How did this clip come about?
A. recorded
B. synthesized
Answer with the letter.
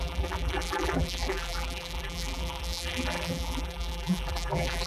B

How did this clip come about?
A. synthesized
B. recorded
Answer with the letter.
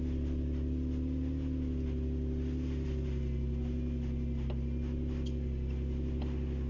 B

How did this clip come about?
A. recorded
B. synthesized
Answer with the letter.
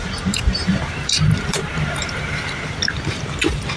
B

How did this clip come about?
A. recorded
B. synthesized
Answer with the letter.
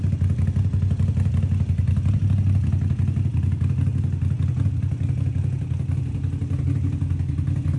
A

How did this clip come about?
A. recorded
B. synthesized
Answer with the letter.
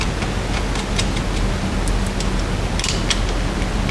A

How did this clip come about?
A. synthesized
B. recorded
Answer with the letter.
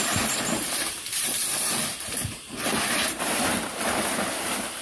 A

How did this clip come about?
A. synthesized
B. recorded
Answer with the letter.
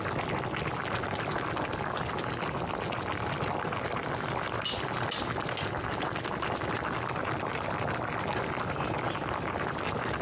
B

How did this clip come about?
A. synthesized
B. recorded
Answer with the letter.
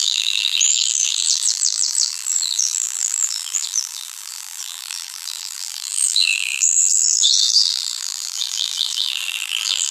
A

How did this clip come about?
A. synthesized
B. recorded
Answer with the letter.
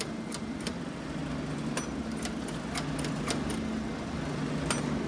B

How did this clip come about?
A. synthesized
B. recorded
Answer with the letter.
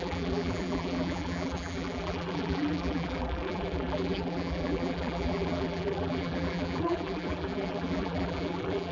A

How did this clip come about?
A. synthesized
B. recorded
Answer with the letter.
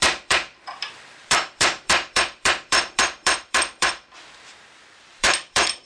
A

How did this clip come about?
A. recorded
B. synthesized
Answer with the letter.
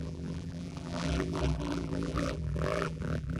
B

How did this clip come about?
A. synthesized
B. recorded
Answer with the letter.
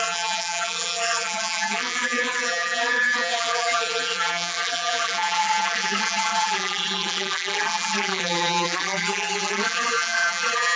A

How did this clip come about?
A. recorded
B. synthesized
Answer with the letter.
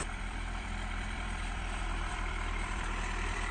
B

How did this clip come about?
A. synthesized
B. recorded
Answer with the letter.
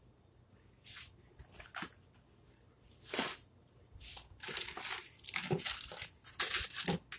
B